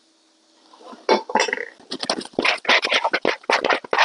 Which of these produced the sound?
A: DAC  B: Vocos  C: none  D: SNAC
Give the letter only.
C